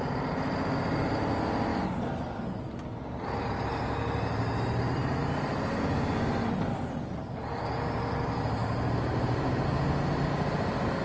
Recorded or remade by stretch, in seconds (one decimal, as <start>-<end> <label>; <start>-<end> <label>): 0.0-8.6 recorded; 8.6-9.5 remade; 9.5-11.0 recorded